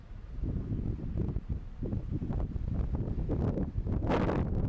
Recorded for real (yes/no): yes